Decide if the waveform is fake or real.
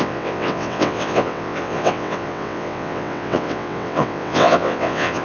fake